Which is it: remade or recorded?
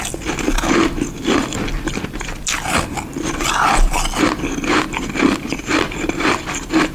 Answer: recorded